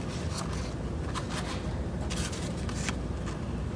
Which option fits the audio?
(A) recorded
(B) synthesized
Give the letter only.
A